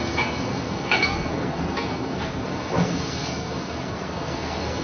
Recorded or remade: remade